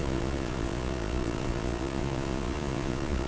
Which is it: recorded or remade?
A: remade